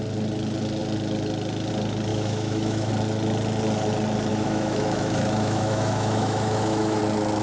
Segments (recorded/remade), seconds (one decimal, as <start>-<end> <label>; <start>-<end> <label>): 0.0-2.1 recorded; 2.1-2.9 remade; 2.9-4.3 recorded; 4.3-7.0 remade; 7.0-7.4 recorded

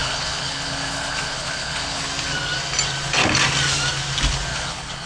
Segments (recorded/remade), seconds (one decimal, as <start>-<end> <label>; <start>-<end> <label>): 0.0-2.0 remade; 2.0-4.5 recorded; 4.5-5.1 remade

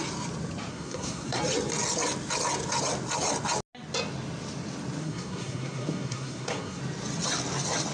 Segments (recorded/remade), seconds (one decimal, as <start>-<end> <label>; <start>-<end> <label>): 0.0-0.7 recorded; 0.7-1.4 remade; 1.4-5.0 recorded; 5.0-6.8 remade; 6.8-7.9 recorded

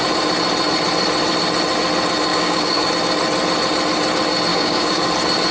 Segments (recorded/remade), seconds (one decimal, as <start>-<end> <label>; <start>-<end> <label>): 0.0-2.3 recorded; 2.3-2.9 remade; 2.9-4.5 recorded; 4.5-5.1 remade; 5.1-5.5 recorded

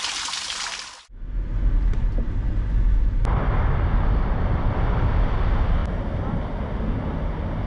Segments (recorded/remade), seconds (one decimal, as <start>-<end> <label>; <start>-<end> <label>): 0.0-7.7 recorded